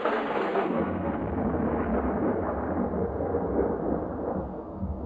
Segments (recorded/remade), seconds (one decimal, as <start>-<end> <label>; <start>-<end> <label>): 0.0-1.2 remade; 1.2-4.3 recorded; 4.3-5.1 remade